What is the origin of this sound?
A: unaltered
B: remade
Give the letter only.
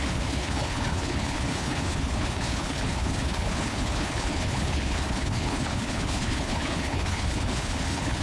B